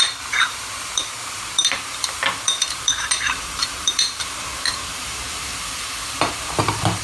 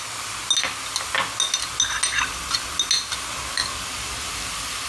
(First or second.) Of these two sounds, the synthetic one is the first